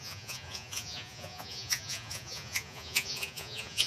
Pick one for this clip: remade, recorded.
remade